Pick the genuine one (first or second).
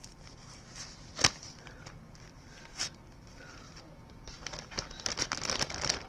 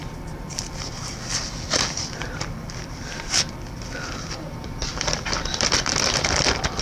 first